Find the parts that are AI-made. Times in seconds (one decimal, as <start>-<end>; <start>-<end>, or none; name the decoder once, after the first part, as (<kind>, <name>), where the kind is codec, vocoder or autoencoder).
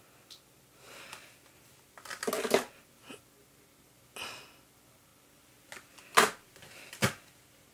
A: none